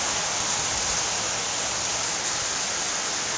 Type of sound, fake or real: real